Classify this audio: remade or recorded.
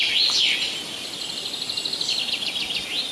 recorded